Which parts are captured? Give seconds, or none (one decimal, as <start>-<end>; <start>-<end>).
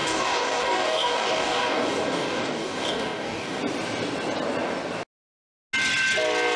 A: 3.6-6.6